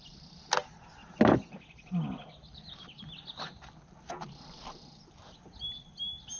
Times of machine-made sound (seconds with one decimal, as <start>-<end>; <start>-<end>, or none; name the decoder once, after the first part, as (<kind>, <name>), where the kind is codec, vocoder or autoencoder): none